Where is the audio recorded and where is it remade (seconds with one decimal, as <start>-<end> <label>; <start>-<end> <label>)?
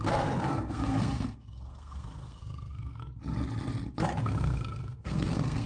0.0-3.0 remade; 3.0-4.2 recorded; 4.2-5.7 remade